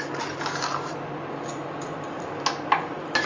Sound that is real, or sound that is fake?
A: real